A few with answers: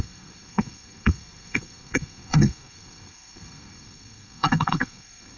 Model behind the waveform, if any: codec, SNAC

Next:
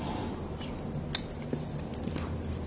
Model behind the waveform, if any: none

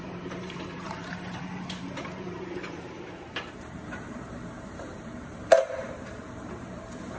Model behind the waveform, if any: vocoder, BigVGAN v2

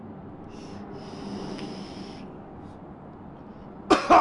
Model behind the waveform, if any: none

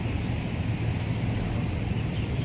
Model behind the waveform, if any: none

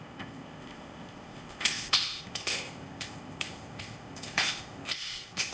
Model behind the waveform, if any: codec, ZipCodec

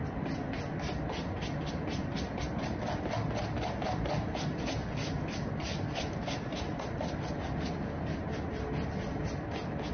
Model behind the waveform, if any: none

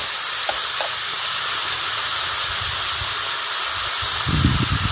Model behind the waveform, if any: none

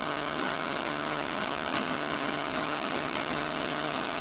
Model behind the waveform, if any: vocoder, HiFi-GAN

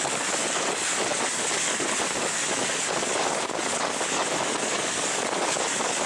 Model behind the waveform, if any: codec, DAC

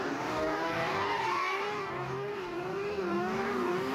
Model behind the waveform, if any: codec, DAC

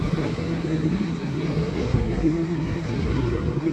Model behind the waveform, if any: codec, SNAC